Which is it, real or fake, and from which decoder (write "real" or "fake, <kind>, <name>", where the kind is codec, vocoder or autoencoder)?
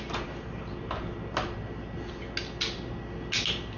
real